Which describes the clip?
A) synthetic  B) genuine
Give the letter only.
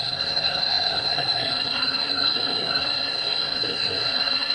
A